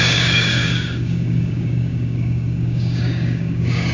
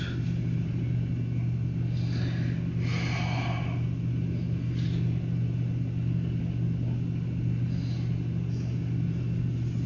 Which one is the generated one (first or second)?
first